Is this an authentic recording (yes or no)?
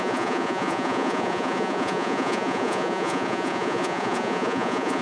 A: no